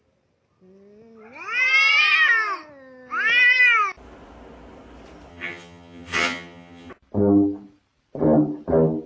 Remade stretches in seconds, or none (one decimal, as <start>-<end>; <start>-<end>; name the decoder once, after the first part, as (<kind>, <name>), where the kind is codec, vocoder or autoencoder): 5.3-6.9 (vocoder, HiFi-GAN)